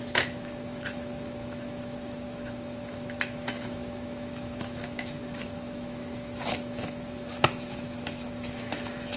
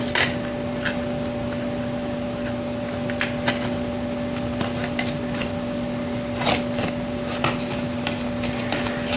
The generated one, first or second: first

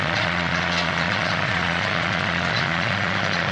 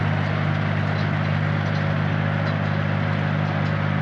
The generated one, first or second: first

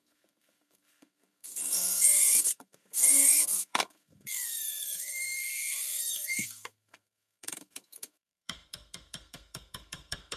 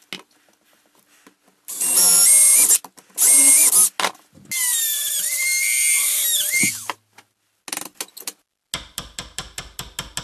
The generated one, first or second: first